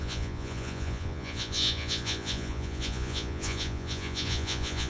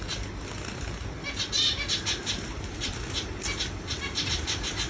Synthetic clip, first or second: first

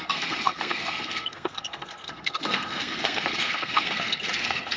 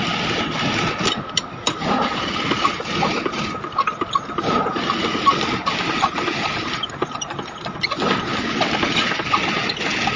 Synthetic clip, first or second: first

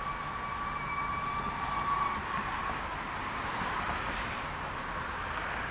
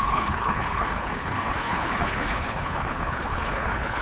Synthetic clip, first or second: second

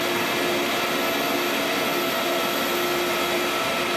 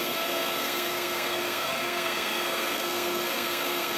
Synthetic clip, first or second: second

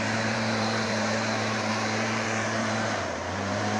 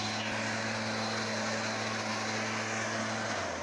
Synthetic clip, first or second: first